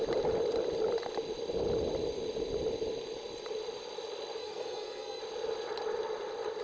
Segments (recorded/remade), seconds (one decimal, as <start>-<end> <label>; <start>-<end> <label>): 0.0-4.4 recorded; 4.4-5.2 remade; 5.2-6.6 recorded